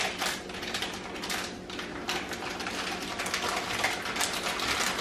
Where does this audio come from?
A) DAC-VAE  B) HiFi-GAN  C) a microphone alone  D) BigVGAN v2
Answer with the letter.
D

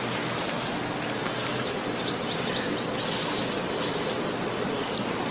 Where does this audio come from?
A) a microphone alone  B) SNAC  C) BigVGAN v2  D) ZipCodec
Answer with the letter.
A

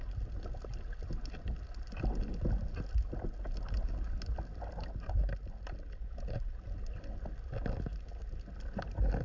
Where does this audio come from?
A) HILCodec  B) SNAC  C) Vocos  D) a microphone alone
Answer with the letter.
D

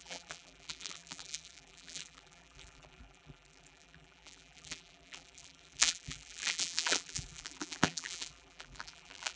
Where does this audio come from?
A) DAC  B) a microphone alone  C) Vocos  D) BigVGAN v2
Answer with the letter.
D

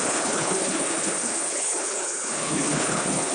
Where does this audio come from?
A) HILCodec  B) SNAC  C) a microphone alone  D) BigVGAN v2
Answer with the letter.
A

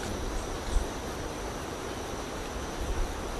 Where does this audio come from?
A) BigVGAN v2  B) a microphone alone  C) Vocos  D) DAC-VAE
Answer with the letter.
B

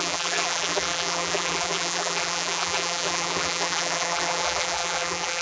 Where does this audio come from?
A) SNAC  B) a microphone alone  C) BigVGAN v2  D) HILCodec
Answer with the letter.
C